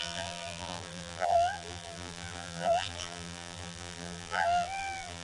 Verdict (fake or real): fake